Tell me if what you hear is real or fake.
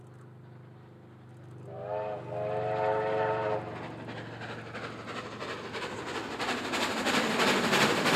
real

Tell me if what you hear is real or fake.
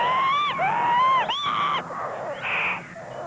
real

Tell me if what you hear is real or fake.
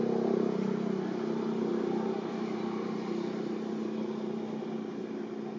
real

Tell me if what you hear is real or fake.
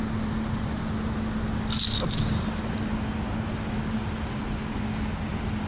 real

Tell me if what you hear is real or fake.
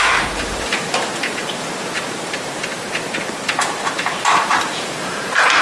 fake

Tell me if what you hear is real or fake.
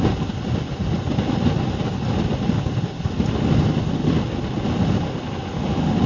real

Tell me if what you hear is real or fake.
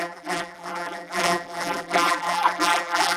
fake